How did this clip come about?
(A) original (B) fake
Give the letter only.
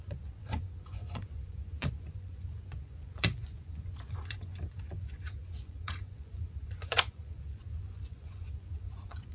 B